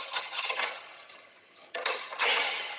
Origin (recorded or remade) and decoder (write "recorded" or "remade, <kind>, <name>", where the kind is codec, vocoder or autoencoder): remade, vocoder, HiFi-GAN